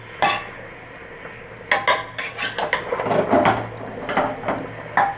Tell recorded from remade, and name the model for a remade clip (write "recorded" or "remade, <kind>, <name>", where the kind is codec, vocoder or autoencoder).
recorded